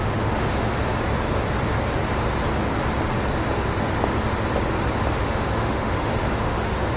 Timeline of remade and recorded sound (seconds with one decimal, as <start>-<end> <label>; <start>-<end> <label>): 0.0-0.9 remade; 0.9-5.1 recorded; 5.1-7.0 remade